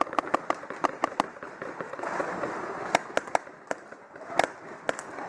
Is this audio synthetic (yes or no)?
no